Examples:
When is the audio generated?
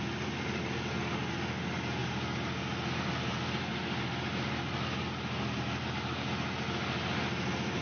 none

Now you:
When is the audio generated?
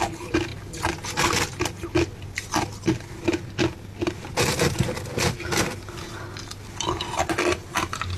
none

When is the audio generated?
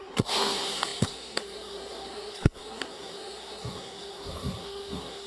0.0-5.3 (codec, SNAC)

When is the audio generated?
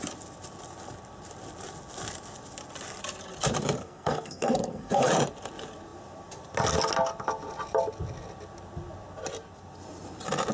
3.8-5.1 (codec, SNAC)